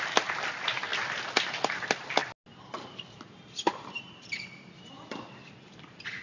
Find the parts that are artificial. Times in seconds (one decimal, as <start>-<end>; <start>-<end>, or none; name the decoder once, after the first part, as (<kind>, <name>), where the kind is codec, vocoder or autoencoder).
0.9-1.4 (vocoder, BigVGAN v2)